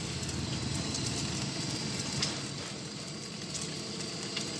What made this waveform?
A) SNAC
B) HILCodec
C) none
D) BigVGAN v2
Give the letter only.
C